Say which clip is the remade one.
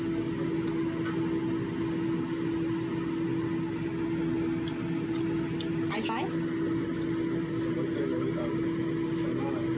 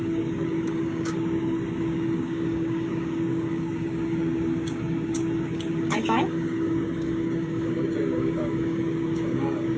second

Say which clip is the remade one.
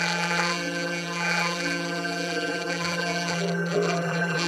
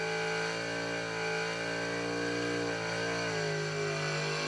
first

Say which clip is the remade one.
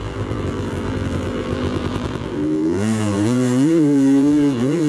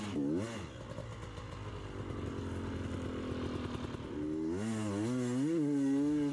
first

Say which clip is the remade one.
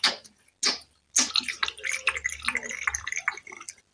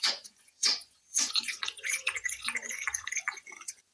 second